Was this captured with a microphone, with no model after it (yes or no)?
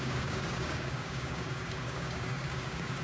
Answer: no